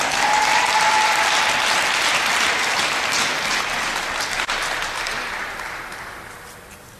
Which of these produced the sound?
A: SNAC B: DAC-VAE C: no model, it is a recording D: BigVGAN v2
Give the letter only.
C